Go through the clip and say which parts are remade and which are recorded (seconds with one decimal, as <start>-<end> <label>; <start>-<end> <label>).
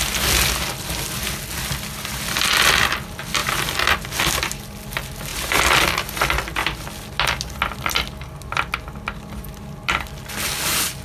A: 0.0-3.4 recorded; 3.4-4.2 remade; 4.2-11.0 recorded